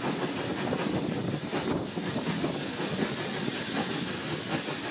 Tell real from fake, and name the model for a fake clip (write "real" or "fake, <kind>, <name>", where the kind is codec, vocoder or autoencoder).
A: fake, vocoder, BigVGAN v2